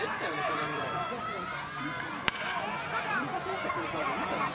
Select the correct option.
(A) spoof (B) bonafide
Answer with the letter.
A